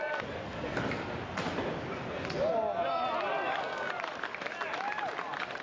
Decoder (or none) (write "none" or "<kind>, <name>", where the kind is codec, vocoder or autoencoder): none